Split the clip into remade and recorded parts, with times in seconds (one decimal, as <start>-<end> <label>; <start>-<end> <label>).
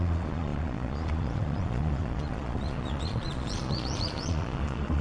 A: 0.0-5.0 remade